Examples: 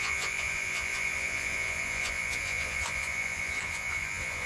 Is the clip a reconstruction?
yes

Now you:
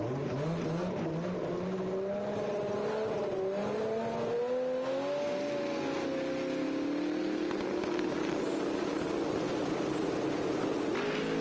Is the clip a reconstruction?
no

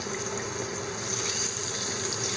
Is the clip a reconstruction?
no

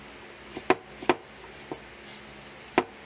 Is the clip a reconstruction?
no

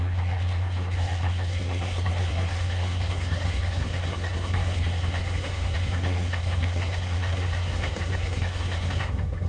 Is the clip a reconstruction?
yes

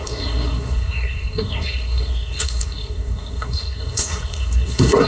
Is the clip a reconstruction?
yes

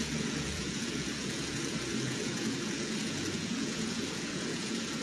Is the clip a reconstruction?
yes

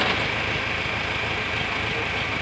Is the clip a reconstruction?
no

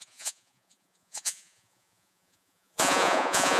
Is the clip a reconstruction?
yes